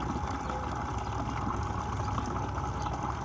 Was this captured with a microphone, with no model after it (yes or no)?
yes